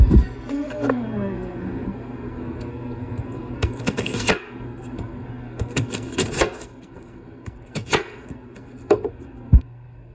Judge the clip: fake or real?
fake